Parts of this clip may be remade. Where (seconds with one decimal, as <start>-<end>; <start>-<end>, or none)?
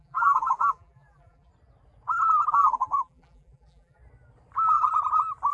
0.0-1.5; 2.5-4.0